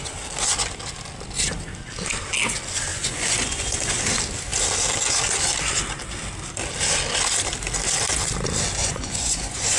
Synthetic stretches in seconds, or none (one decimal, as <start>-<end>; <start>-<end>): 2.9-3.9; 8.8-9.8